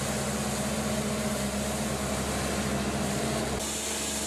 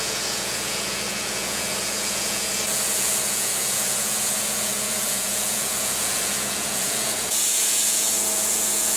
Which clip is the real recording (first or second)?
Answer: first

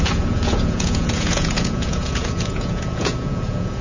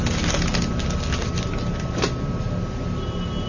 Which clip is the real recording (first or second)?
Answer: second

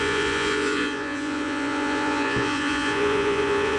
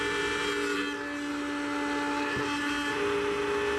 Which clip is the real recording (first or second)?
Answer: second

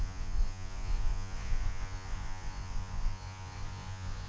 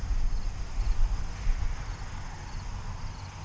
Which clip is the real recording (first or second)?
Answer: second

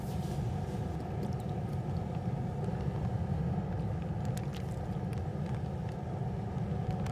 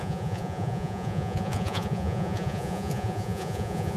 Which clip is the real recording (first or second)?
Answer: first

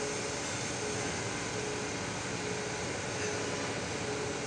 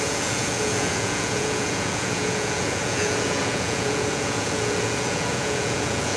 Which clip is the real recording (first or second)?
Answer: first